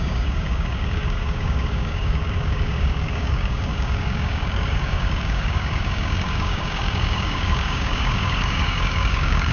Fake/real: fake